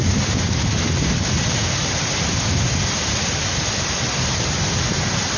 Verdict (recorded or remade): remade